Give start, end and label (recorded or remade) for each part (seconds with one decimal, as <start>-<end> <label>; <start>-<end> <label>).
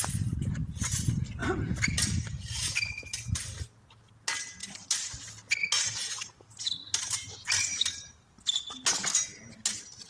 0.0-10.1 recorded